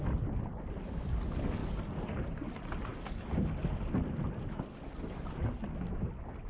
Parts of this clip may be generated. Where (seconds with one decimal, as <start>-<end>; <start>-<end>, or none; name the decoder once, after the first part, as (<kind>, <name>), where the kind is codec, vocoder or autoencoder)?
1.6-2.5 (vocoder, BigVGAN v2)